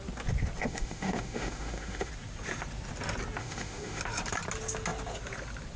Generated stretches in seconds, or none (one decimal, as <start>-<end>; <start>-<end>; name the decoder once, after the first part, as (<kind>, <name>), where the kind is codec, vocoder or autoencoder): 0.6-2.1 (autoencoder, DAC-VAE); 3.4-4.0